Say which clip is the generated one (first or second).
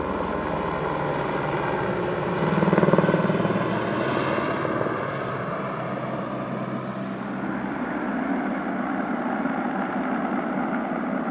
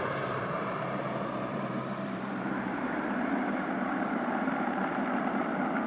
second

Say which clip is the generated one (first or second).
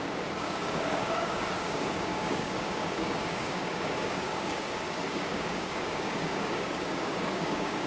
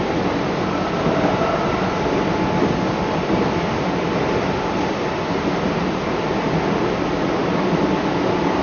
first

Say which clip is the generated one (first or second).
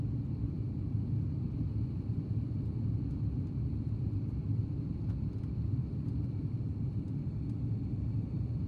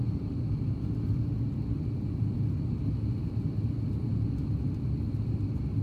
first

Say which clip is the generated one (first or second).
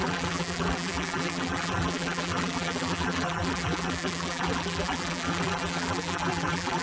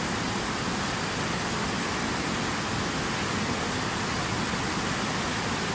first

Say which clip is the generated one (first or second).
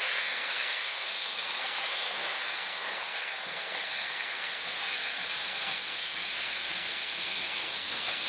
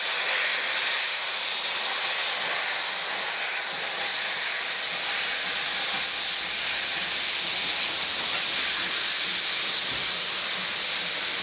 first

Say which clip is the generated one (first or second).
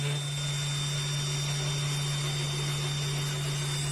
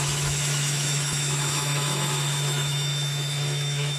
second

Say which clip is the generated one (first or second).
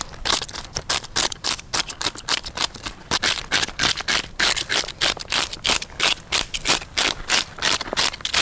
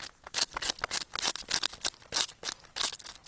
first